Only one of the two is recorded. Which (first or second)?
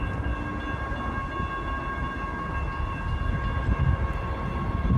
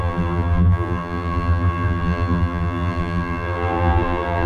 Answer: first